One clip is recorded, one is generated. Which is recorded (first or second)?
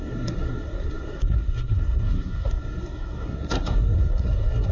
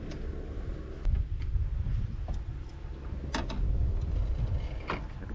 second